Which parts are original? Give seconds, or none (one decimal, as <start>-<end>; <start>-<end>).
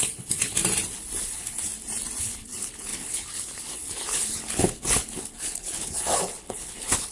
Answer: 0.6-1.2; 1.7-2.2